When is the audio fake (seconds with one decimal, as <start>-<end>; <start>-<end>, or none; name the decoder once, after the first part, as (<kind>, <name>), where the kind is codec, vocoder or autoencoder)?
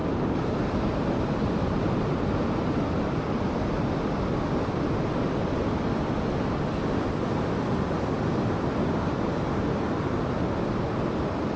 none